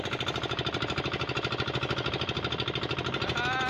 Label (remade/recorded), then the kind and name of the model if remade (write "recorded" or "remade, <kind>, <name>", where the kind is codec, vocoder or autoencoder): recorded